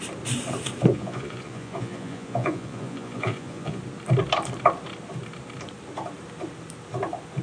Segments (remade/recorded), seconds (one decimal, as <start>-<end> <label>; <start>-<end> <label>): 0.0-0.9 recorded; 0.9-3.8 remade; 3.8-7.4 recorded